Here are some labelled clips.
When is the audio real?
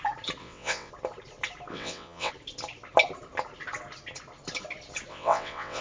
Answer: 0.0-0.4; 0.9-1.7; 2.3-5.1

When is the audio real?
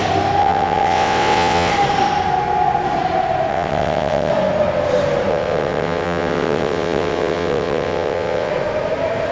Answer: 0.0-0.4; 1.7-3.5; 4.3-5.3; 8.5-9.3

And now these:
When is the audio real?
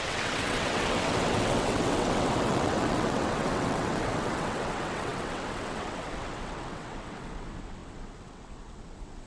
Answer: none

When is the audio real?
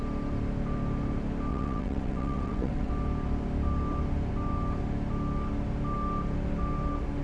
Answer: 0.0-1.5; 2.9-7.2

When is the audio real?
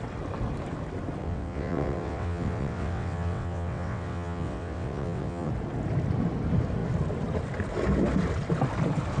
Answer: 0.0-1.2; 5.5-9.2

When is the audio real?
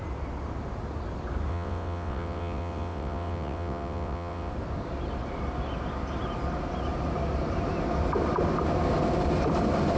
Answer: 0.0-1.5; 4.5-10.0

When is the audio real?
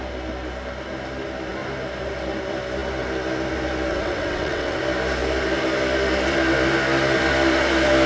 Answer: 0.0-3.9; 4.8-8.1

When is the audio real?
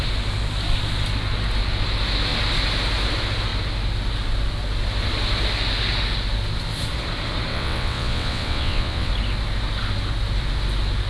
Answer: 0.0-7.5; 9.1-11.1